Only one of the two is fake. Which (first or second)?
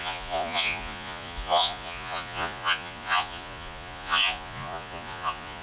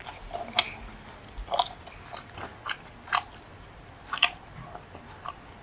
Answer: first